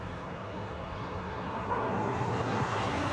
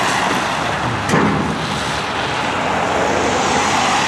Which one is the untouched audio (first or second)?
second